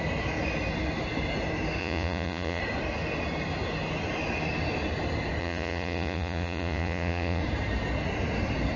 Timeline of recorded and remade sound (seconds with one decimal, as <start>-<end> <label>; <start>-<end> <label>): 0.0-1.8 recorded; 1.8-2.6 remade; 2.6-5.4 recorded; 5.4-7.4 remade; 7.4-8.8 recorded